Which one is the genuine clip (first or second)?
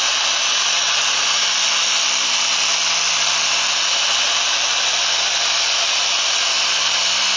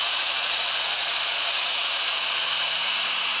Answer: first